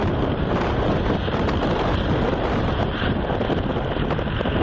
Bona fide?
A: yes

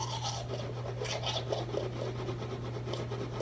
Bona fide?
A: yes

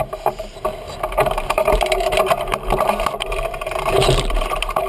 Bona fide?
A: no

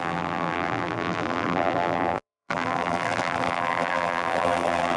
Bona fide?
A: no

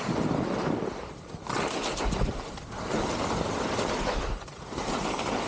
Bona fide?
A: yes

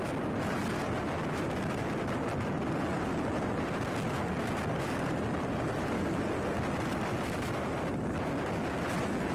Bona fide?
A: yes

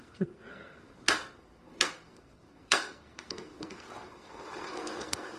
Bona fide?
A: no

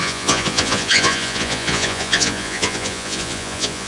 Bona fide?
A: no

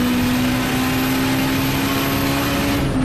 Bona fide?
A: yes